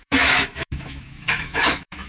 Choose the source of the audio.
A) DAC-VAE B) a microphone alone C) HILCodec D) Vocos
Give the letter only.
A